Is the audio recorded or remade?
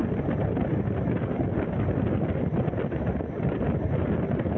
recorded